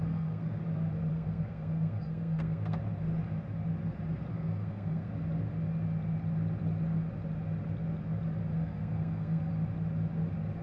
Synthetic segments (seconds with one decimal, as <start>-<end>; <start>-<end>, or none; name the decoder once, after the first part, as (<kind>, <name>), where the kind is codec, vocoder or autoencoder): 0.0-0.6 (codec, SNAC); 1.1-2.8; 4.3-5.1; 8.5-9.5